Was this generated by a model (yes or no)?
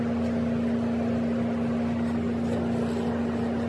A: no